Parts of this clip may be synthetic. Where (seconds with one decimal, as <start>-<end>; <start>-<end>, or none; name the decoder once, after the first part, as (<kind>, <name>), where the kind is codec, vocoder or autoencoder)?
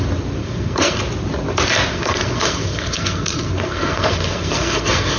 0.4-1.0 (codec, SNAC); 1.9-5.2